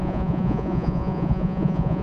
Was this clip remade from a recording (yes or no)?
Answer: yes